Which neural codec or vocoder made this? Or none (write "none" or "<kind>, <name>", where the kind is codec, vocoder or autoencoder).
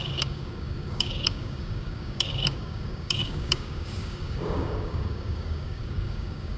codec, DAC